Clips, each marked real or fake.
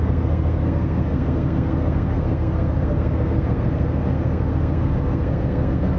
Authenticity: fake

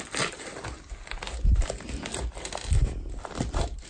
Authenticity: real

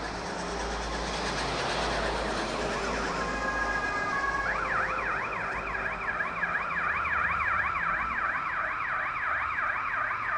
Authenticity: real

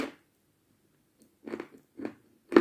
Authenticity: real